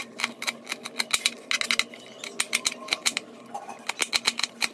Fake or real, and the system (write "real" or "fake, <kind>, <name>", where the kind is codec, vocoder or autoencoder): real